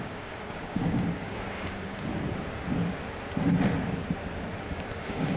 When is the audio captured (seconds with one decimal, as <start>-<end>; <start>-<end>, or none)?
2.1-4.7